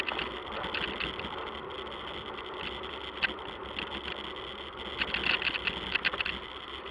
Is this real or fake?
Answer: real